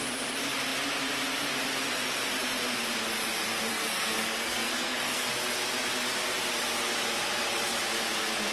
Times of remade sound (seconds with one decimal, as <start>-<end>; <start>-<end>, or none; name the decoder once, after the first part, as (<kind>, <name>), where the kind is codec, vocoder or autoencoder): 3.7-5.3 (codec, SNAC)